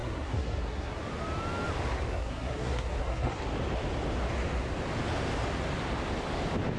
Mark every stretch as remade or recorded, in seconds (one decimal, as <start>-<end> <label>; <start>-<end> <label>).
0.0-1.0 remade; 1.0-2.1 recorded; 2.1-3.4 remade; 3.4-6.8 recorded